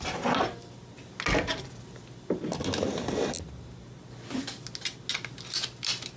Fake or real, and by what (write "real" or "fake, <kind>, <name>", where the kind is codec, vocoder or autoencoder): real